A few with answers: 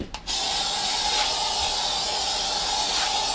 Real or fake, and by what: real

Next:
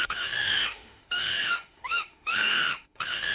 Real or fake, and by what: fake, autoencoder, DAC-VAE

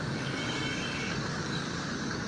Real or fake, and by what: fake, codec, DAC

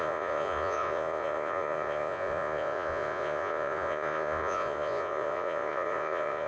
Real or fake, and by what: fake, vocoder, Vocos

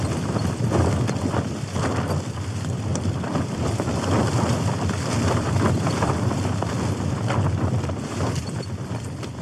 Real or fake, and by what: fake, vocoder, BigVGAN v2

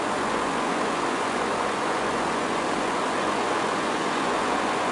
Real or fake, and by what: fake, vocoder, Vocos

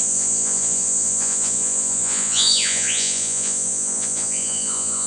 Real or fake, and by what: fake, vocoder, Vocos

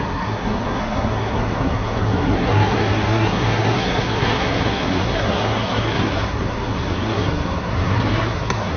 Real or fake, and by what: fake, codec, SNAC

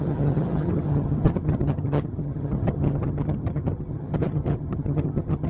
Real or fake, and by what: fake, vocoder, HiFi-GAN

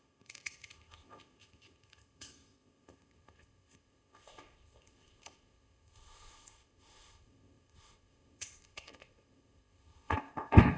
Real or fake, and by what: fake, codec, ZipCodec